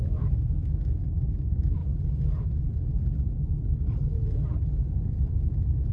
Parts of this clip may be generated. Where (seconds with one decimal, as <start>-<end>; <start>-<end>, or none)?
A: 0.0-1.8; 5.3-5.9